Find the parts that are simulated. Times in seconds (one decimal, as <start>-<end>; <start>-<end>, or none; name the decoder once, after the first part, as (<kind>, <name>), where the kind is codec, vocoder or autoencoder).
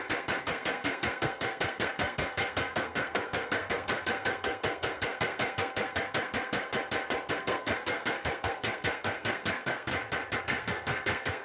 0.0-6.7 (codec, SNAC); 7.3-9.9; 10.4-11.4